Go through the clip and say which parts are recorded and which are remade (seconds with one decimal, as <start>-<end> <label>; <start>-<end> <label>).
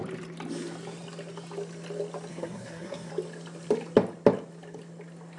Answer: 0.0-2.3 recorded; 2.3-3.1 remade; 3.1-5.4 recorded